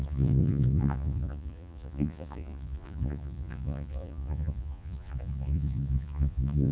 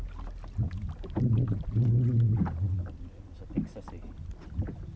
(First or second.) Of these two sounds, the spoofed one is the first